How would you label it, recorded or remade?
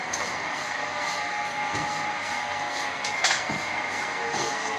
remade